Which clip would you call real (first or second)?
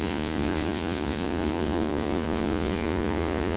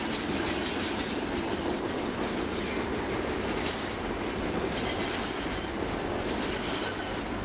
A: second